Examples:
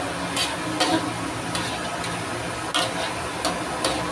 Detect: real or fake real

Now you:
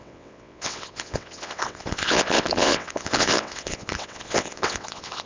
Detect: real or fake fake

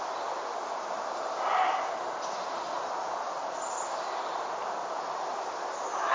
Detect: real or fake real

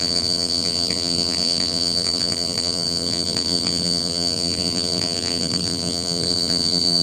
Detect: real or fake fake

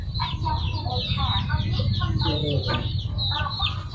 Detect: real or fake real